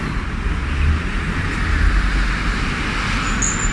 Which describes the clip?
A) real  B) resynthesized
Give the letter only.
A